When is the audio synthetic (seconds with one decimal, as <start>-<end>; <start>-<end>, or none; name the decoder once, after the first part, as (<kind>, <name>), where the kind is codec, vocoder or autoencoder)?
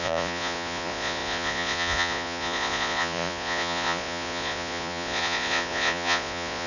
0.0-6.7 (vocoder, Vocos)